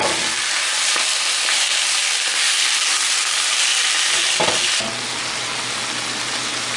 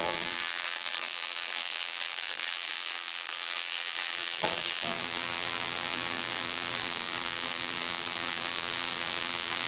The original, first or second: first